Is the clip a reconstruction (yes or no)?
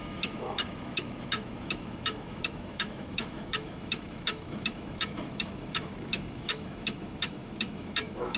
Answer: yes